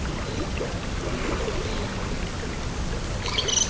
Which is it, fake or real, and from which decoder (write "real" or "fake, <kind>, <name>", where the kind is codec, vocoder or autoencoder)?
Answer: real